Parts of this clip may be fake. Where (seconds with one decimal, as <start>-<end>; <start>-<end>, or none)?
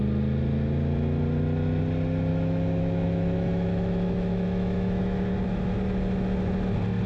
2.3-5.7